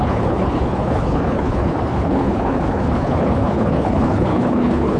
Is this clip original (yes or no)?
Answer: no